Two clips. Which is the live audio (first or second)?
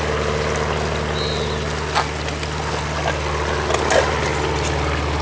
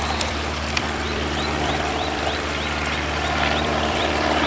first